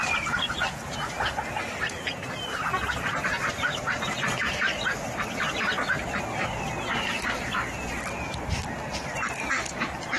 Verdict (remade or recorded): recorded